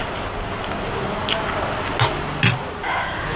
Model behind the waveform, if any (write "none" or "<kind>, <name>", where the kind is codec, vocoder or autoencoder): none